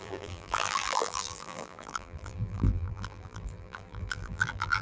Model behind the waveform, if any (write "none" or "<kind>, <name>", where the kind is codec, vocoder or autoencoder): vocoder, BigVGAN v2